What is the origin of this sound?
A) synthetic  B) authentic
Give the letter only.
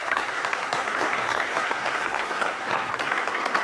A